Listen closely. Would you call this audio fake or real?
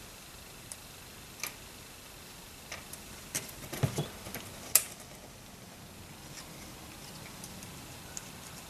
real